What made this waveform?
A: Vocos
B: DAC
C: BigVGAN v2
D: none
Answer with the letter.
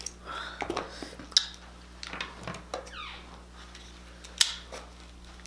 D